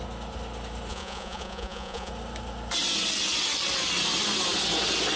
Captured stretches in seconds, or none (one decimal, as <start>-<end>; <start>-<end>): 0.0-0.9; 2.1-5.2